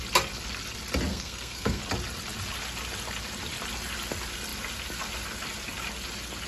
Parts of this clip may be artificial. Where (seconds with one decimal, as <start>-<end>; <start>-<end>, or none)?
1.1-1.8